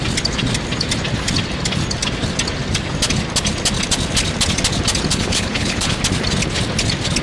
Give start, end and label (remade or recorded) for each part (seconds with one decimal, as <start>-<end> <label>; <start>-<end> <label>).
0.0-5.1 recorded; 5.1-6.0 remade; 6.0-7.2 recorded